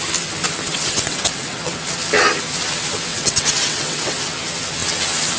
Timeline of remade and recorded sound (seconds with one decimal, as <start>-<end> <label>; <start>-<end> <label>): 0.0-0.7 recorded; 0.7-1.7 remade; 1.7-3.1 recorded; 3.1-4.2 remade; 4.2-5.4 recorded